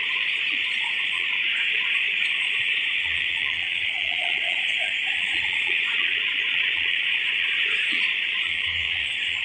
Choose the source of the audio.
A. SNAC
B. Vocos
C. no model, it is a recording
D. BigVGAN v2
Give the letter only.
B